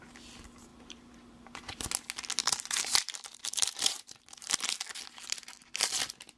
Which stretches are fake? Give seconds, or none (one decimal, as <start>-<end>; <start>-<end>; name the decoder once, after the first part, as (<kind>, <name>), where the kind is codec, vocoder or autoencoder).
0.7-1.9 (vocoder, BigVGAN v2); 2.4-4.1

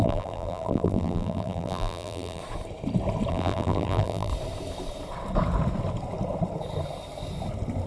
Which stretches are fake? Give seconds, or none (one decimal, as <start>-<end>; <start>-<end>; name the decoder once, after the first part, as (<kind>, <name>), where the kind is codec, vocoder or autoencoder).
0.0-2.4 (vocoder, BigVGAN v2); 3.3-4.3